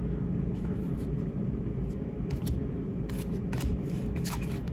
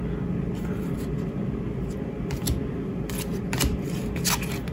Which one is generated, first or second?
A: first